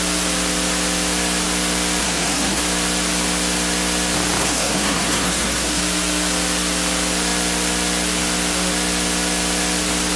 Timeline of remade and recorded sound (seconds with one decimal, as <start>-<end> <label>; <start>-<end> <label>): 0.0-2.0 recorded; 2.0-2.6 remade; 2.6-4.4 recorded; 4.4-5.8 remade; 5.8-10.2 recorded